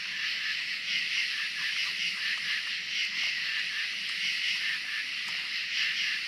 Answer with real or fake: real